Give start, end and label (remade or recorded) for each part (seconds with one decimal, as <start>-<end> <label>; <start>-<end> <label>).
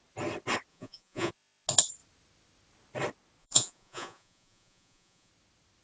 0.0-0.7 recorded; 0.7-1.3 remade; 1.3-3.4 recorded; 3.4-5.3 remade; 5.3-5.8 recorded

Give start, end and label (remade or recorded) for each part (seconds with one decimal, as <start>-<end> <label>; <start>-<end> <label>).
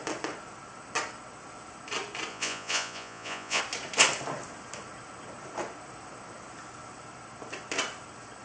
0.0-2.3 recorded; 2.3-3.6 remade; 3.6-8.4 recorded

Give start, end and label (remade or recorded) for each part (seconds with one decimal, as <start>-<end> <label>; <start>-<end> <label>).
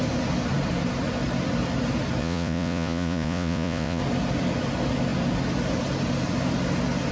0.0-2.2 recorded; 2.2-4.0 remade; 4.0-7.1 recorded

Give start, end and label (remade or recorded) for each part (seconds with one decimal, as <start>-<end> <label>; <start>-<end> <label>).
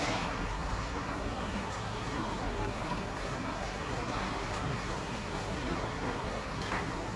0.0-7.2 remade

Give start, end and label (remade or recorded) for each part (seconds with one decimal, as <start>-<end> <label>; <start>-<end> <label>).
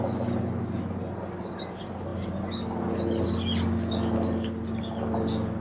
0.0-5.6 recorded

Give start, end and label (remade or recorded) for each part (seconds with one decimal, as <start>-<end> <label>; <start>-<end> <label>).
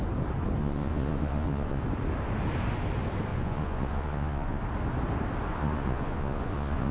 0.0-0.6 recorded; 0.6-1.8 remade; 1.8-3.3 recorded; 3.3-4.6 remade; 4.6-5.5 recorded; 5.5-6.9 remade